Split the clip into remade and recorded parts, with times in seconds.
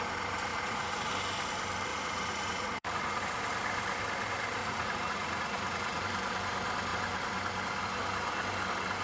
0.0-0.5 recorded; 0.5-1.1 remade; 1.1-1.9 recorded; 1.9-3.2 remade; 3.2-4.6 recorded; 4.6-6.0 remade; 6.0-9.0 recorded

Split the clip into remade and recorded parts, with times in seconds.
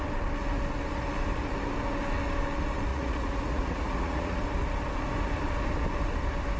0.0-2.9 recorded; 2.9-4.4 remade; 4.4-6.6 recorded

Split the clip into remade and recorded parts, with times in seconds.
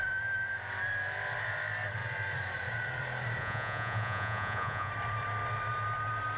0.0-3.4 recorded; 3.4-4.9 remade; 4.9-6.4 recorded